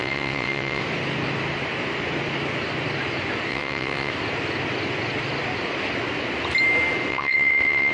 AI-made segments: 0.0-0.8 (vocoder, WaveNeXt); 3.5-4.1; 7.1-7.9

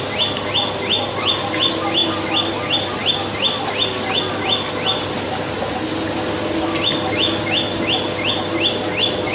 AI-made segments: none

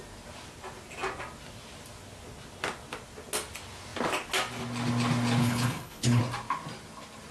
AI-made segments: 5.4-6.2 (codec, HILCodec)

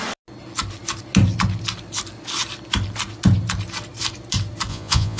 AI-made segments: 4.7-5.2 (vocoder, Vocos)

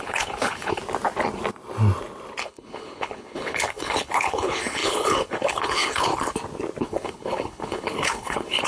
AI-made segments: 0.0-0.8 (codec, HILCodec); 2.4-6.1; 6.8-8.7

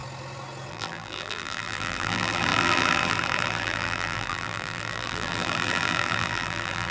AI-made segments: 0.7-6.9 (vocoder, BigVGAN v2)